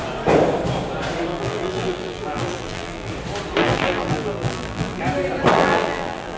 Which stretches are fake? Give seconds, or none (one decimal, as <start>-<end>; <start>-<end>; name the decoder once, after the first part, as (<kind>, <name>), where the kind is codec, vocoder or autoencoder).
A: 1.3-3.1 (vocoder, BigVGAN v2); 3.6-5.0; 5.5-6.4